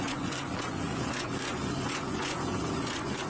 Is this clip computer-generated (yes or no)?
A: yes